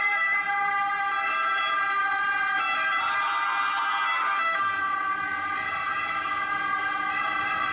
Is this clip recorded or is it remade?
recorded